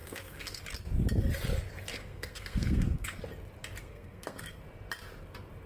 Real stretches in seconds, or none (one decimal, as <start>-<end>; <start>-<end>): 0.6-1.9; 3.2-3.8; 4.6-5.7